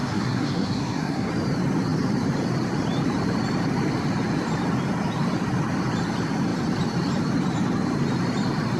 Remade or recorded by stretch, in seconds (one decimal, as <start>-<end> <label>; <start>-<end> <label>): 0.0-1.3 remade; 1.3-8.8 recorded